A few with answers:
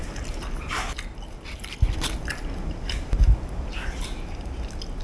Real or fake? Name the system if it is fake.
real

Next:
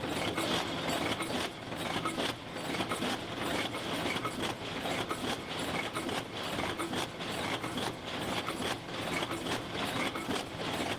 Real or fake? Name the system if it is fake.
real